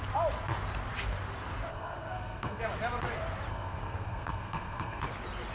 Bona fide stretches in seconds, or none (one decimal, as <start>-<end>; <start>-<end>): 0.0-1.7; 2.6-3.5; 5.0-5.5

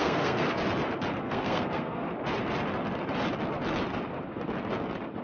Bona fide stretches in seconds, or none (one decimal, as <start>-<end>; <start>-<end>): 0.6-1.2; 2.0-5.2

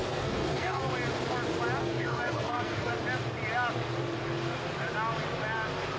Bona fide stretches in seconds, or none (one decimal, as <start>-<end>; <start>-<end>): 0.9-1.8; 2.9-6.0

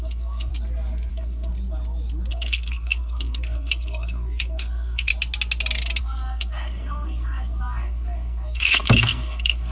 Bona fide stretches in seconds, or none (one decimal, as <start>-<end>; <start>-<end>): 0.5-1.1; 1.5-2.3; 5.1-6.0

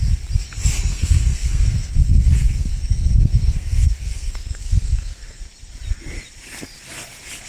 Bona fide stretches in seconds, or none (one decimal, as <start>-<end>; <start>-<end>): 0.0-0.9; 5.4-7.5

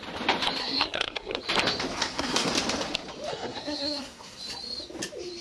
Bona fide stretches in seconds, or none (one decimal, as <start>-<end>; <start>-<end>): 0.0-0.6; 1.4-2.0; 2.5-3.3; 4.4-5.4

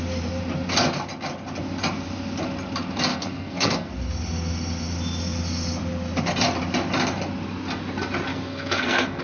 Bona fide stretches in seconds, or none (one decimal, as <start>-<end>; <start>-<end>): 0.0-3.1; 3.9-8.3

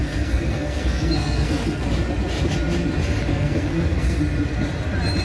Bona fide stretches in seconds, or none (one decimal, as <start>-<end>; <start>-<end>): 1.8-3.3; 4.2-5.2